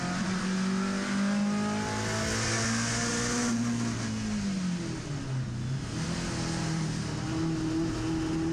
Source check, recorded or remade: recorded